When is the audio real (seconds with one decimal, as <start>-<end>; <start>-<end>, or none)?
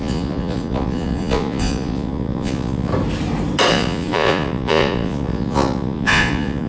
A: 2.9-3.7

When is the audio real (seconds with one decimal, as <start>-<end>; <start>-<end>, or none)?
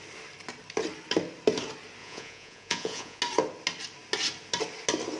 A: 0.0-2.0; 3.2-5.2